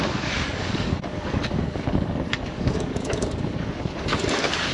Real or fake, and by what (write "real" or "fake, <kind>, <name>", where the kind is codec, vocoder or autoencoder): fake, codec, DAC